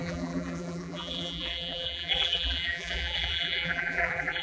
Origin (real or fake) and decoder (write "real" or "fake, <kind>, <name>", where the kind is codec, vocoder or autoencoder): fake, vocoder, BigVGAN v2